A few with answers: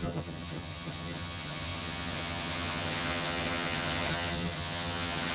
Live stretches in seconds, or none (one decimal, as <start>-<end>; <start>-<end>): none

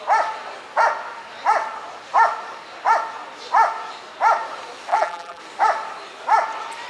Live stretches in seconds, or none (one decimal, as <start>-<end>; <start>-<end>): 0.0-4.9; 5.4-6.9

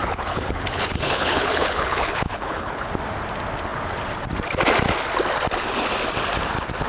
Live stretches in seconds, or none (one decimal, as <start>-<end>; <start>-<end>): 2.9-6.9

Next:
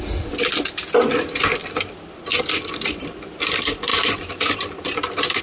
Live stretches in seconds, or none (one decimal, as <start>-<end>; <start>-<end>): 0.0-1.6; 2.4-3.9

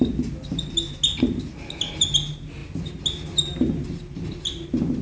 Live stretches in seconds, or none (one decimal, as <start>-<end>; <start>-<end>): 0.0-5.0

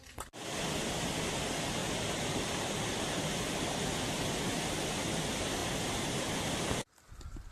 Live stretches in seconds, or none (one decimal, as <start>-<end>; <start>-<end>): 0.0-7.5

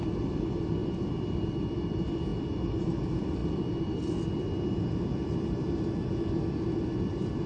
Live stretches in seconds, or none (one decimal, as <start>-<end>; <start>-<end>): 5.6-6.8

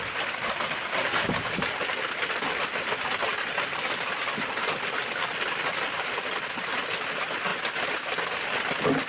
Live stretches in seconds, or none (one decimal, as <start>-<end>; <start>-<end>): 0.0-1.0; 2.3-3.3; 6.2-9.1